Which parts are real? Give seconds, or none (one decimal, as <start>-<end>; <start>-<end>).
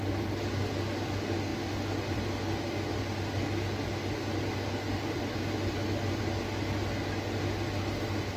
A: 0.0-8.4